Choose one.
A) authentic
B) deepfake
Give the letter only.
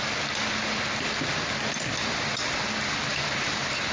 A